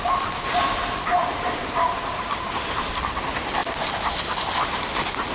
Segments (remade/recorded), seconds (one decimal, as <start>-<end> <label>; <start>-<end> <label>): 0.0-1.2 recorded; 1.2-2.9 remade; 2.9-5.3 recorded